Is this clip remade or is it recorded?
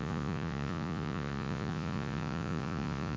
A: remade